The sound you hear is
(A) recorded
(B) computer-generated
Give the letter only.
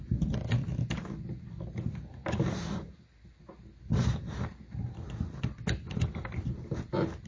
A